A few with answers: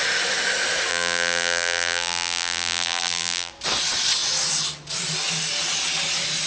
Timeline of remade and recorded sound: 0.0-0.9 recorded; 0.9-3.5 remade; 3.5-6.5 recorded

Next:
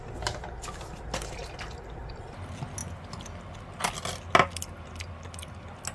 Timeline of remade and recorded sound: 0.0-5.9 recorded

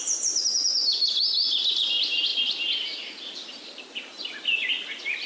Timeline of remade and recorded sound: 0.0-5.3 recorded

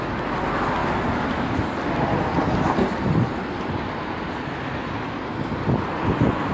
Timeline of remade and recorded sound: 0.0-6.5 recorded

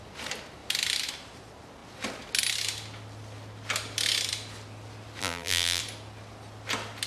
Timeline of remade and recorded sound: 0.0-5.2 recorded; 5.2-5.8 remade; 5.8-7.1 recorded

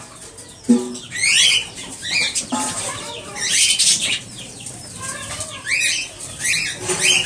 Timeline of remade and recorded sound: 0.0-1.2 recorded; 1.2-5.3 remade; 5.3-7.3 recorded

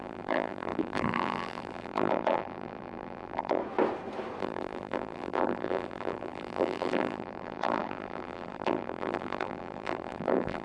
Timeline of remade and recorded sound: 0.0-3.6 remade; 3.6-4.4 recorded; 4.4-10.6 remade